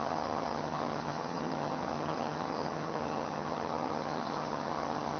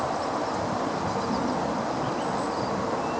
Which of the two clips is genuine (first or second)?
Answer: second